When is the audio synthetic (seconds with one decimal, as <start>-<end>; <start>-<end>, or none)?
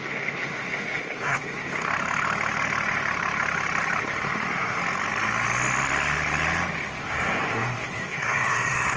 0.0-1.9; 4.0-4.8; 7.0-9.0